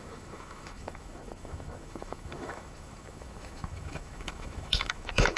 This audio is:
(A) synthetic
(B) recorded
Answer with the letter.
A